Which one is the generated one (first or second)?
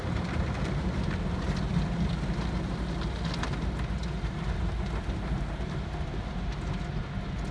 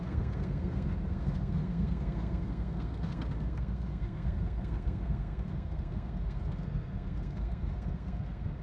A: second